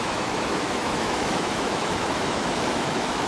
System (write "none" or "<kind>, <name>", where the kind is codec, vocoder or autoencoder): autoencoder, DAC-VAE